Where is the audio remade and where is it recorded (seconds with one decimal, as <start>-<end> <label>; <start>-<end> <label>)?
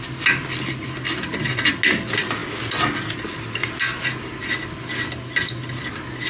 0.0-6.3 recorded